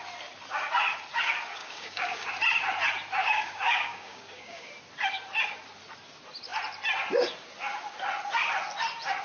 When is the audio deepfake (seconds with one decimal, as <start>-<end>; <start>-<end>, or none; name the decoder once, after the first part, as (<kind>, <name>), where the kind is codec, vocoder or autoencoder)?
1.6-2.3 (codec, DAC); 3.2-4.7